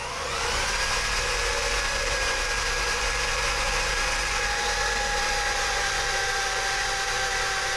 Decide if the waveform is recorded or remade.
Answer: remade